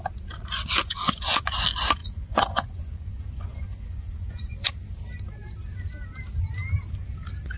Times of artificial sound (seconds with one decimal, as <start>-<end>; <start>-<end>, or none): 0.8-1.4; 2.0-4.7